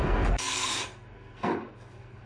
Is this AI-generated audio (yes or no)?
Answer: yes